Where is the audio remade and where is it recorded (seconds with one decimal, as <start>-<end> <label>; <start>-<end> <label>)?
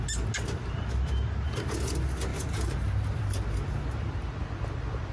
0.0-2.3 recorded; 2.3-3.2 remade; 3.2-5.1 recorded